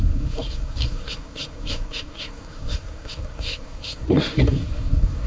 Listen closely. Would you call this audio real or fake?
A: fake